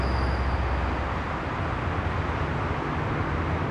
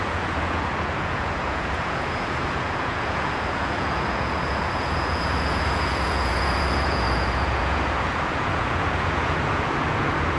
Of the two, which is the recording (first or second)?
first